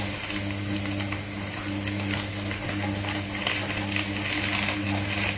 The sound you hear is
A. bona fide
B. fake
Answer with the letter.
A